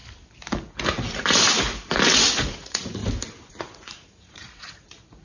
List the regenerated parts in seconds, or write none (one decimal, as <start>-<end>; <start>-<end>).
2.4-3.0; 3.5-5.2